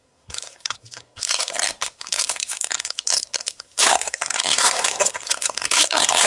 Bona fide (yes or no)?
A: no